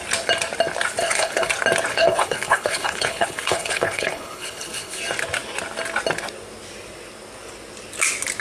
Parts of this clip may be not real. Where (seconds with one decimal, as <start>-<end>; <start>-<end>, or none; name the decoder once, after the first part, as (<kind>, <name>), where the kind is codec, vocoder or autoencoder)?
1.0-1.5 (codec, HILCodec); 1.9-5.0